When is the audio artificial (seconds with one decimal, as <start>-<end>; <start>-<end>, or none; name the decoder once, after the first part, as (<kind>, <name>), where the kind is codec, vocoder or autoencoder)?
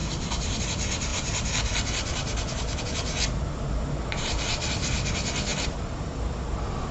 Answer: 0.0-0.6 (vocoder, BigVGAN v2); 1.1-2.8; 5.5-6.4